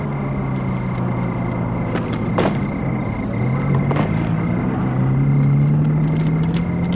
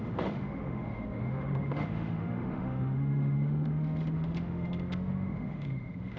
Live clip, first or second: first